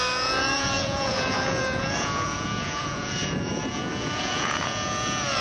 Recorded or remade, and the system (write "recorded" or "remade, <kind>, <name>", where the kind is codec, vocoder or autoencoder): remade, vocoder, Vocos